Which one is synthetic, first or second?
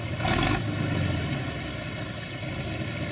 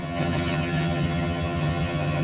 second